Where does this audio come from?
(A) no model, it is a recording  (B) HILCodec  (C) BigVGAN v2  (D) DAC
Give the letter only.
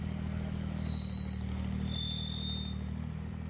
A